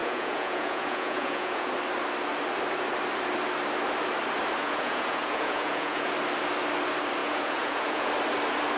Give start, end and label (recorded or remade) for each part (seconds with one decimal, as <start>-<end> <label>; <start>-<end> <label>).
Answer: 0.0-1.7 remade; 1.7-4.6 recorded; 4.6-6.1 remade; 6.1-7.2 recorded; 7.2-8.1 remade; 8.1-8.8 recorded